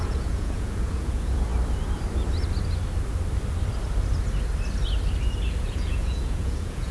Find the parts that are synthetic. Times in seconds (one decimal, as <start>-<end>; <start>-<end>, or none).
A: 0.0-1.5; 5.6-6.9